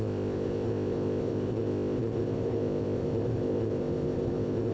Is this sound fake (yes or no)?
yes